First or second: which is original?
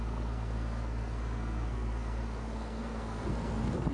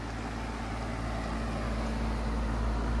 second